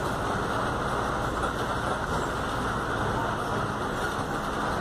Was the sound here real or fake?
real